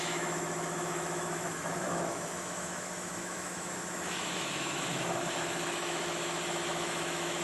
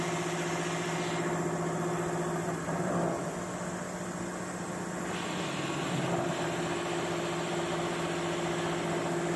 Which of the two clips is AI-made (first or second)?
first